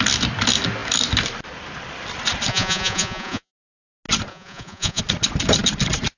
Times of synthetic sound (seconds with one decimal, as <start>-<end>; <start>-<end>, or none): 2.5-3.5; 4.3-5.0